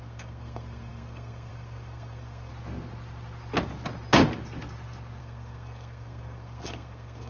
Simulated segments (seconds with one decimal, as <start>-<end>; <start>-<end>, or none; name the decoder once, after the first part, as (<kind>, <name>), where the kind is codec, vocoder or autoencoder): 0.0-2.5 (codec, SNAC); 5.2-7.3

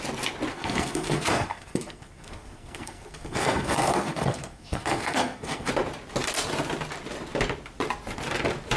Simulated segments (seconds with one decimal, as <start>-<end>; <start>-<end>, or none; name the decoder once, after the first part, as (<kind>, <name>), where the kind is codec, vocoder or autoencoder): 0.5-5.7 (codec, SNAC)